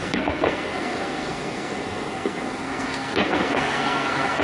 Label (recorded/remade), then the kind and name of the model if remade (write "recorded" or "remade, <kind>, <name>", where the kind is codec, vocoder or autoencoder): remade, codec, SNAC